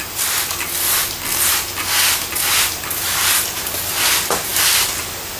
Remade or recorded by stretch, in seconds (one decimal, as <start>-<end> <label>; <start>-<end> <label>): 0.0-5.4 recorded